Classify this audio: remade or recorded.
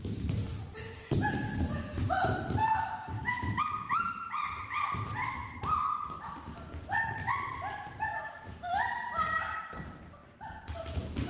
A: remade